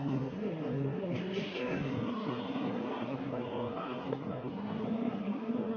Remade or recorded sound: remade